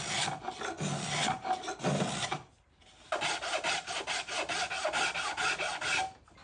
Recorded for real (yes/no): yes